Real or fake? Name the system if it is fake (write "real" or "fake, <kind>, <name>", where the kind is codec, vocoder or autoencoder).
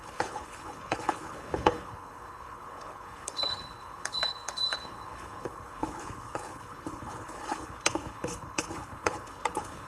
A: fake, codec, HILCodec